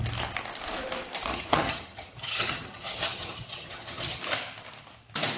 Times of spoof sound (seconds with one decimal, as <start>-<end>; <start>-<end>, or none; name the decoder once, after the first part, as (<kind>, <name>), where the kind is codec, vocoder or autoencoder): 1.3-4.2 (vocoder, HiFi-GAN)